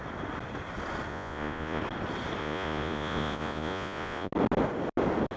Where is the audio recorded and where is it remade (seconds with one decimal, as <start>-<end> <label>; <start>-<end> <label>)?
0.0-1.1 recorded; 1.1-1.8 remade; 1.8-2.4 recorded; 2.4-4.3 remade; 4.3-5.4 recorded